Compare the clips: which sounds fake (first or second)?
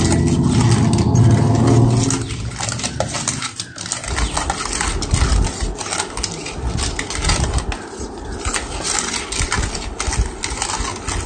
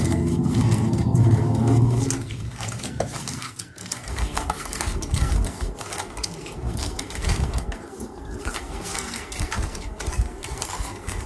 second